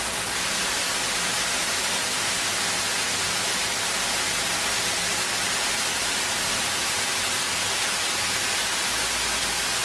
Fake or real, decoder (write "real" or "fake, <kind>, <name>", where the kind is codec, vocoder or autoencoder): real